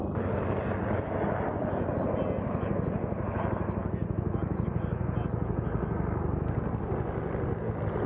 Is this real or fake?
real